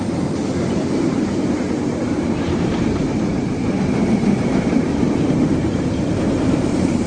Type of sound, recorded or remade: remade